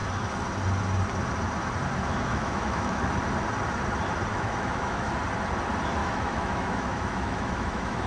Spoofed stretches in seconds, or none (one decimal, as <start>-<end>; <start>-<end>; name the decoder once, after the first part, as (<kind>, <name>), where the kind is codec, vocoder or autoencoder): 2.3-3.1 (autoencoder, DAC-VAE); 4.3-5.1; 6.0-8.1